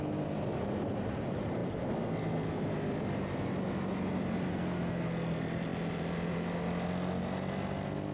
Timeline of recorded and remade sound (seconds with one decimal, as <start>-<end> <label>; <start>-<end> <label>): 0.0-4.5 recorded; 4.5-5.1 remade; 5.1-8.1 recorded